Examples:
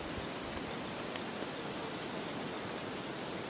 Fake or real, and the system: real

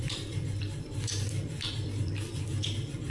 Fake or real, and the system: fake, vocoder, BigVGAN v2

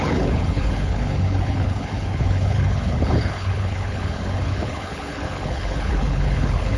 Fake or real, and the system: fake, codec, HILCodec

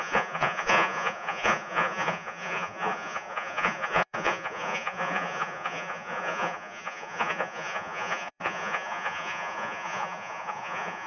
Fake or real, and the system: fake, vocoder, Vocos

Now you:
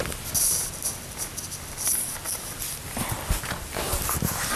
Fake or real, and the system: real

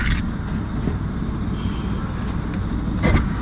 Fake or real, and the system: real